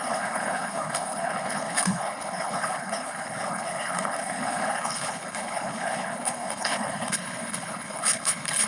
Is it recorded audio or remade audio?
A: remade